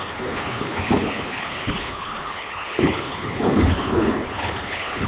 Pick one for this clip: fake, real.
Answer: fake